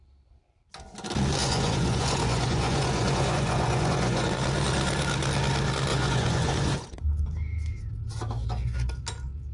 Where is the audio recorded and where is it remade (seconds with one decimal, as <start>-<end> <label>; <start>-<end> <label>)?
0.0-1.4 recorded; 1.4-4.3 remade; 4.3-5.9 recorded; 5.9-7.2 remade; 7.2-9.5 recorded